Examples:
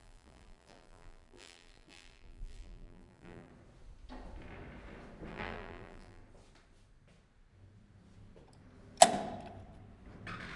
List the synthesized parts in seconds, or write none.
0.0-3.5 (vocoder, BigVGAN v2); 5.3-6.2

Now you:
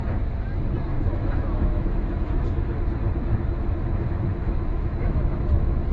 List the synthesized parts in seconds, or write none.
0.9-2.8 (autoencoder, DAC-VAE); 4.4-5.4

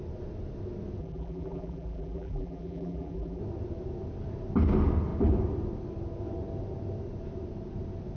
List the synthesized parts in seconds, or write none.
1.0-3.4 (vocoder, BigVGAN v2)

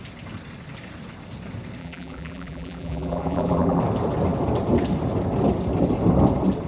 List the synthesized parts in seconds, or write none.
1.8-3.8 (vocoder, BigVGAN v2)

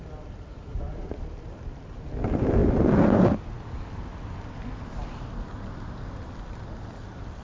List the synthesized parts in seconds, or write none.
none

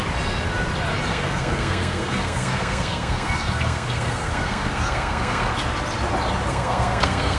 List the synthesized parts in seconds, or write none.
1.1-5.5 (codec, SNAC); 6.5-7.4

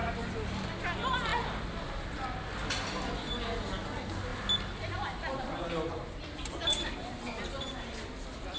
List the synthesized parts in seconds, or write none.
none